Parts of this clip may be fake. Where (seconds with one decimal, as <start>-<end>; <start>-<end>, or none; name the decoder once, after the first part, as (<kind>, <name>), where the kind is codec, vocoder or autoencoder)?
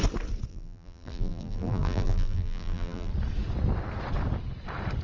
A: 0.5-3.1 (vocoder, BigVGAN v2)